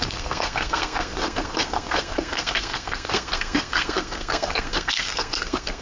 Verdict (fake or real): fake